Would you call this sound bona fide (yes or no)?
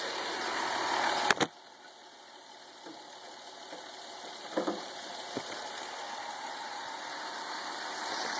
yes